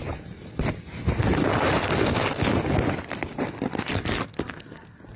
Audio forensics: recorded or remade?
recorded